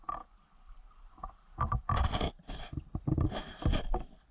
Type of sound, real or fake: real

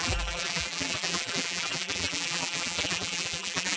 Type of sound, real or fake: fake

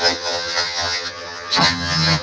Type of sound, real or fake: fake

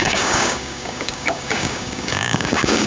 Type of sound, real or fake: fake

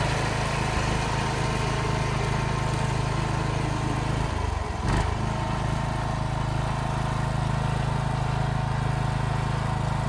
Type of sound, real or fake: real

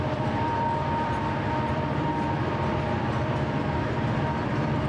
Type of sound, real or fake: fake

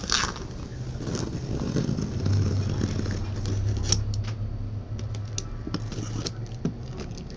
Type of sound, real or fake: real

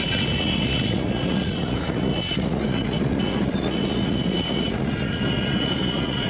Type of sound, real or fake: fake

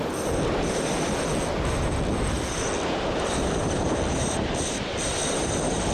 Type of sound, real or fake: real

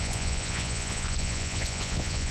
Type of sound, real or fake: fake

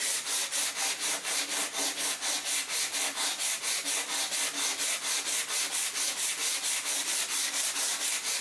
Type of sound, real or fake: real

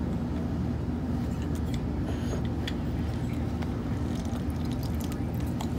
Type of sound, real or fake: real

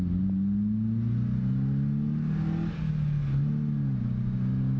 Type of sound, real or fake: real